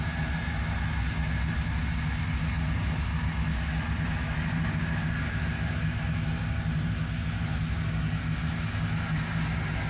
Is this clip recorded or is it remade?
recorded